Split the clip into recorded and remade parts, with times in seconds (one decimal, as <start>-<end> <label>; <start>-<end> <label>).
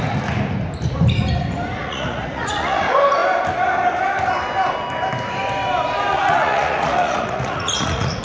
0.0-1.8 recorded; 1.8-2.8 remade; 2.8-6.1 recorded; 6.1-8.2 remade